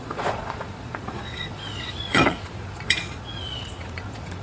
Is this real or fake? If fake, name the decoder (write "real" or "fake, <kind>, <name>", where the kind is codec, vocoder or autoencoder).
fake, vocoder, Vocos